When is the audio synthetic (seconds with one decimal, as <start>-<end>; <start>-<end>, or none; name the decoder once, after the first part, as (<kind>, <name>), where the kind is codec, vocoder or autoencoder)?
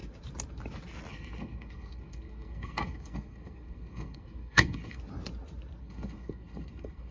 1.1-5.0 (codec, SNAC); 5.8-7.1